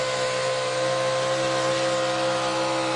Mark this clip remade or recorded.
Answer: recorded